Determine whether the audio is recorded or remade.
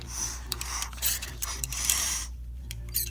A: remade